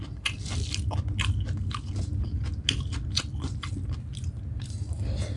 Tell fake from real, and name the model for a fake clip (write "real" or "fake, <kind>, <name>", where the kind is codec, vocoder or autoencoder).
real